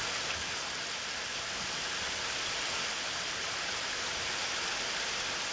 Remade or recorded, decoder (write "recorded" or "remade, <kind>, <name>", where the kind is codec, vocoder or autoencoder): recorded